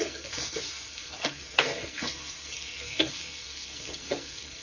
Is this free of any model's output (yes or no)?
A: no